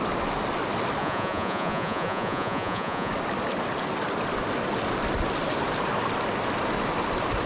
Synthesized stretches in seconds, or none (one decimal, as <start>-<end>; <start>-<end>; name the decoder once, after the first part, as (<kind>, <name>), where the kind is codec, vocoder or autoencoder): 1.0-3.1 (vocoder, Vocos)